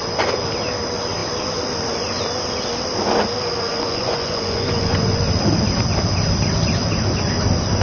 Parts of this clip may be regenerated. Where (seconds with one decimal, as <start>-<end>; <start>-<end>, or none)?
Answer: 3.7-5.2